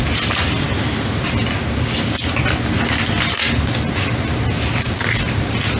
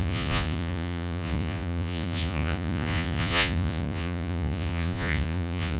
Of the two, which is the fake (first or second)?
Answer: second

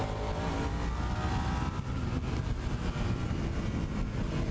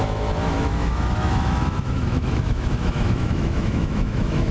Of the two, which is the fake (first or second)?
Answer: second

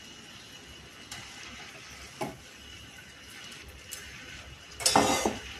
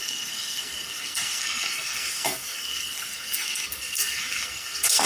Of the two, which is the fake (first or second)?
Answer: second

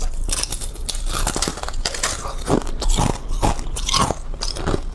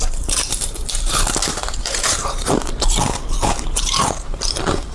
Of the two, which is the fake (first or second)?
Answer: second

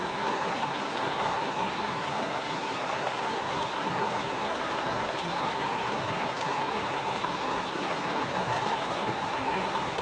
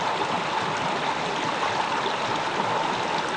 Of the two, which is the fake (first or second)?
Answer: first